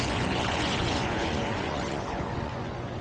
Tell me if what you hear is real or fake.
fake